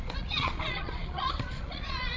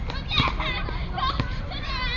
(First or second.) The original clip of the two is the second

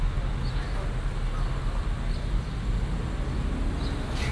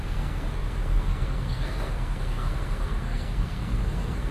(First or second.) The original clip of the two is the first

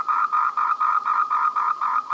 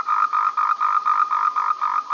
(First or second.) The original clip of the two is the second